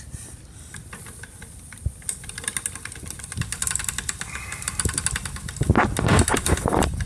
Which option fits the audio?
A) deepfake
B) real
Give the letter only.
B